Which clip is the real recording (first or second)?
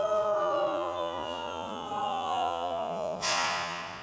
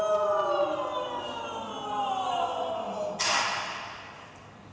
second